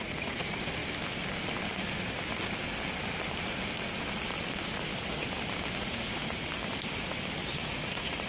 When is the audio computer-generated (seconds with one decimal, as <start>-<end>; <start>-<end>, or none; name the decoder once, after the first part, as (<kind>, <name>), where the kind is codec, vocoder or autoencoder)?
0.0-0.8 (vocoder, Vocos); 5.8-6.2; 7.6-8.3